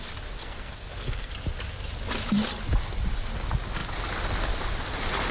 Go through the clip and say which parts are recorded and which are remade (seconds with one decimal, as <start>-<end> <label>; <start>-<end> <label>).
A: 0.0-0.4 recorded; 0.4-1.3 remade; 1.3-5.3 recorded